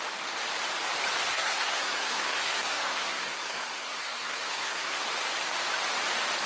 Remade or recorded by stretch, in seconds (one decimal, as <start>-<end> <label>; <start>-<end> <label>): 0.0-1.3 recorded; 1.3-5.0 remade; 5.0-6.5 recorded